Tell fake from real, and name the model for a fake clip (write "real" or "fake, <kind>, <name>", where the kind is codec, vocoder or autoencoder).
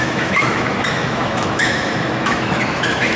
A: fake, autoencoder, DAC-VAE